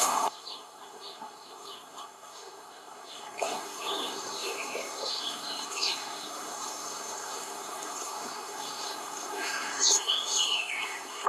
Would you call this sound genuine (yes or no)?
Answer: no